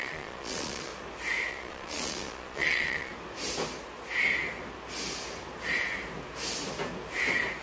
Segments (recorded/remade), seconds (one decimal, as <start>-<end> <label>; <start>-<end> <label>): 0.0-0.9 remade; 0.9-1.5 recorded; 1.5-3.1 remade; 3.1-7.6 recorded